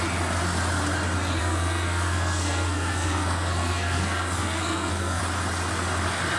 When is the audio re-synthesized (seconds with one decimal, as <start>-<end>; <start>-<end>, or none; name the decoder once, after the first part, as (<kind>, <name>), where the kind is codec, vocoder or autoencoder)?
1.4-5.2 (codec, SNAC)